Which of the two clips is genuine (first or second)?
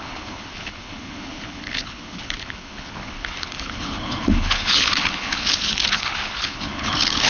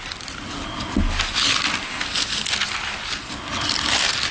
second